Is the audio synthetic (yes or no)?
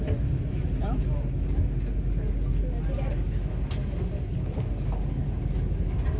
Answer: no